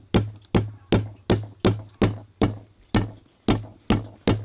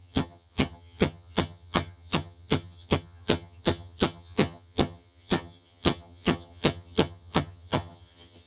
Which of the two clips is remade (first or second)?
second